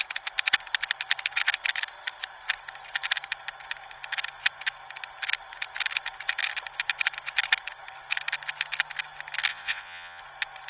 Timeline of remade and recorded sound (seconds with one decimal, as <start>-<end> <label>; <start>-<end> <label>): 0.0-9.5 recorded; 9.5-10.2 remade; 10.2-10.7 recorded